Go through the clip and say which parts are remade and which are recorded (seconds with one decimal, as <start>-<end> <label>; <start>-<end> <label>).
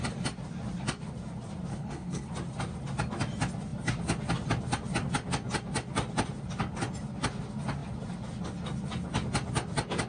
0.0-1.7 recorded; 1.7-2.3 remade; 2.3-10.1 recorded